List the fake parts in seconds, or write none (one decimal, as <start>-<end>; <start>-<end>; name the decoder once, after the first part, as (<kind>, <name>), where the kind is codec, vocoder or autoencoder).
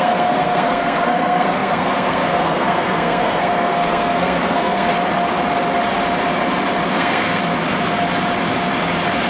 0.0-4.9 (codec, SNAC); 6.9-7.4